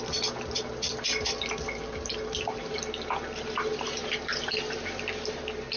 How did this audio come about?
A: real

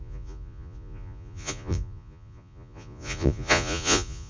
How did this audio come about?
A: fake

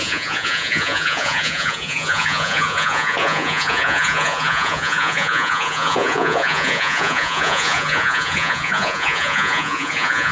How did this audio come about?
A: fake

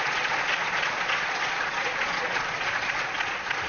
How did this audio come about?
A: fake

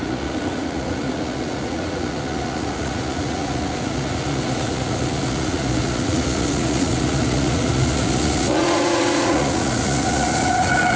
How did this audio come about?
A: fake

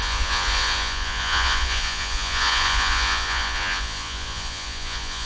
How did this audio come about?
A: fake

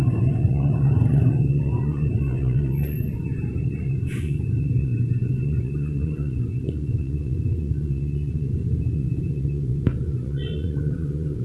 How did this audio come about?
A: fake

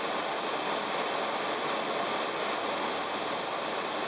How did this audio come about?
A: real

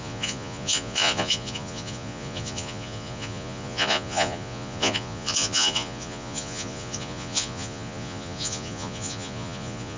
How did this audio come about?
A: fake